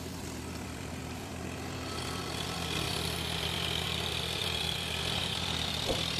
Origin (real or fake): fake